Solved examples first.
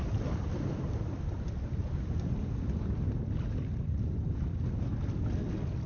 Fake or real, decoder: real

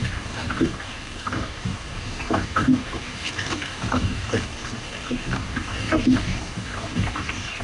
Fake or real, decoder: fake, codec, DAC